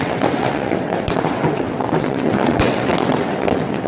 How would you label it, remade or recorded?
remade